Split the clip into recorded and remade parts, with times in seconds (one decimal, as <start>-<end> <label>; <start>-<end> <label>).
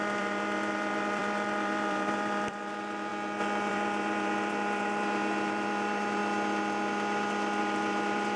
0.0-3.1 remade; 3.1-3.7 recorded; 3.7-6.2 remade; 6.2-7.6 recorded; 7.6-8.4 remade